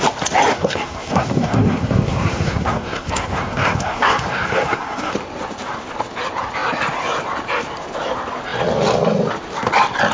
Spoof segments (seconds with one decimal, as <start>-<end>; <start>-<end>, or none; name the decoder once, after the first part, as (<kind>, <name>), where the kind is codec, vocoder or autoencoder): 0.5-5.1 (codec, SNAC)